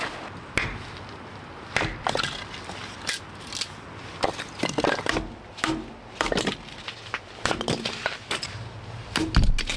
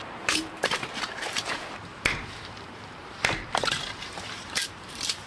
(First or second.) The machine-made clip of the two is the second